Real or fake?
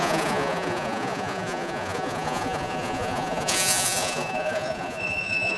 fake